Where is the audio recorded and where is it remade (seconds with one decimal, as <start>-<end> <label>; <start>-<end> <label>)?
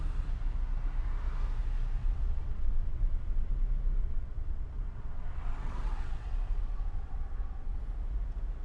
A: 0.0-2.0 recorded; 2.0-3.5 remade; 3.5-4.0 recorded; 4.0-7.8 remade; 7.8-8.6 recorded